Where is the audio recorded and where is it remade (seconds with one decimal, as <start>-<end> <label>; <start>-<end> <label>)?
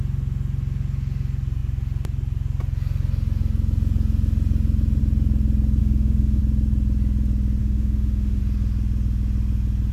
0.0-5.8 recorded; 5.8-6.4 remade; 6.4-7.6 recorded; 7.6-8.4 remade; 8.4-9.9 recorded